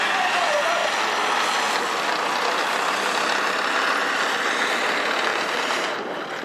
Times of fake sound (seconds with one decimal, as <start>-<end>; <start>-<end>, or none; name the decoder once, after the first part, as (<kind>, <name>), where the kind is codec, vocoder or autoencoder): 5.3-6.4 (vocoder, BigVGAN v2)